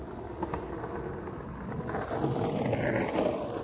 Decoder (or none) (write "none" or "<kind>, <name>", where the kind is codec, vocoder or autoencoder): none